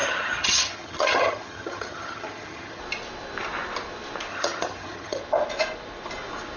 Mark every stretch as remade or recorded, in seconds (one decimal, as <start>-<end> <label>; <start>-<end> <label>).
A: 0.0-2.8 remade; 2.8-4.3 recorded; 4.3-5.2 remade; 5.2-6.6 recorded